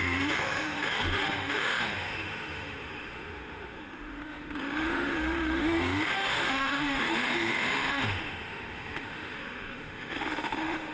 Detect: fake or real fake